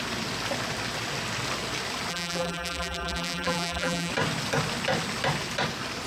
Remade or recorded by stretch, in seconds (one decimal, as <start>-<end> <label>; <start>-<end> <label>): 0.0-2.1 recorded; 2.1-4.1 remade; 4.1-6.1 recorded